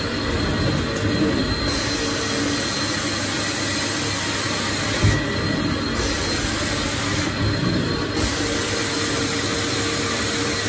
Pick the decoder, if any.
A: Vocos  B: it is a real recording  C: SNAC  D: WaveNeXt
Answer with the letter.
B